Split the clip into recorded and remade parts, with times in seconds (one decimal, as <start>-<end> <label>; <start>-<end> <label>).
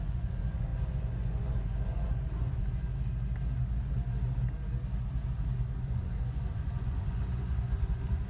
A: 0.0-2.9 remade; 2.9-5.8 recorded; 5.8-8.3 remade